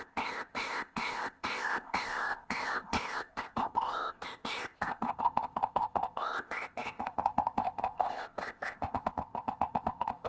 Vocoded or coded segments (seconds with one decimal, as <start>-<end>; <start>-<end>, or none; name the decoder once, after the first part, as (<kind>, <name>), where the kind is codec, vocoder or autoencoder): 0.0-10.3 (codec, ZipCodec)